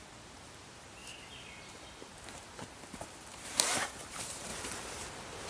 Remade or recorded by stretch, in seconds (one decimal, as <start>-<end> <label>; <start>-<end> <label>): 0.0-5.5 remade